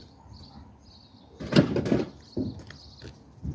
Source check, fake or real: real